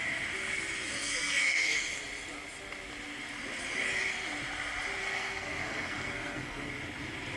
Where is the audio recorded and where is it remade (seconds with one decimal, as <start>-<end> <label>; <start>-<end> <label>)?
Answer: 0.0-1.0 recorded; 1.0-2.0 remade; 2.0-5.0 recorded; 5.0-6.7 remade; 6.7-7.4 recorded